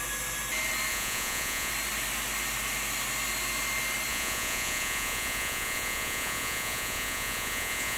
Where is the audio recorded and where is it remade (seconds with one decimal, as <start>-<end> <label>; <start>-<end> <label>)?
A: 0.0-0.9 recorded; 0.9-1.7 remade; 1.7-4.1 recorded; 4.1-8.0 remade